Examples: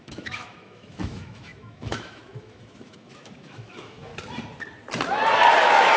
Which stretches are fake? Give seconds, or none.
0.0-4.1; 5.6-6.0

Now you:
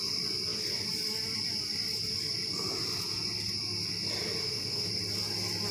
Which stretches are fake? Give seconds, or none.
4.4-4.9

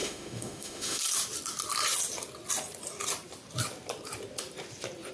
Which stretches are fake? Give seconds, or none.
0.0-1.0

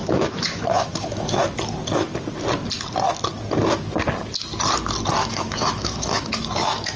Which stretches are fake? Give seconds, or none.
0.0-1.4; 5.2-7.0

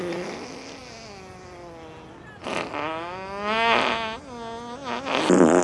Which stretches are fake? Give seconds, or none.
none

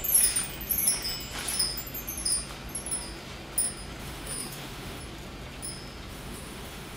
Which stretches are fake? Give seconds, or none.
4.0-5.0; 6.1-7.0